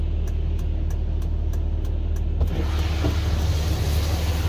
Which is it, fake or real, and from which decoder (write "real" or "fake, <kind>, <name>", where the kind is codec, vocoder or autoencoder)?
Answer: real